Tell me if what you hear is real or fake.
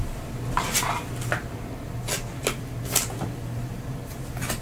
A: real